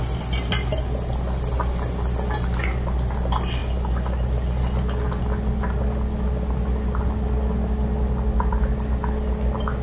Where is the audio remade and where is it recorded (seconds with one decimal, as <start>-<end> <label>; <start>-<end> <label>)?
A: 0.0-9.8 recorded